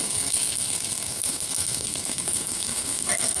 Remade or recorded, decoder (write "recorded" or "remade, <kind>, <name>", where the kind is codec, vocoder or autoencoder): remade, codec, SNAC